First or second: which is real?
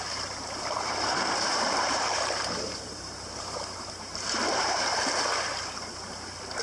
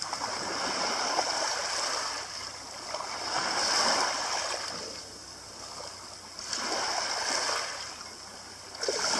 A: second